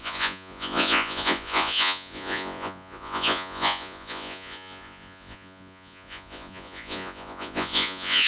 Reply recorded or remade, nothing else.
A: remade